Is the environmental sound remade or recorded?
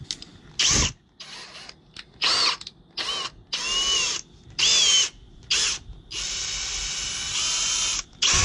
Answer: recorded